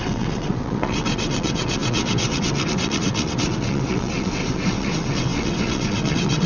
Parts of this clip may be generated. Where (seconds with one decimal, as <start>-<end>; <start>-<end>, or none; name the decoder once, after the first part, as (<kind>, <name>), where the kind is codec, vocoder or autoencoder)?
0.0-6.5 (vocoder, WaveNeXt)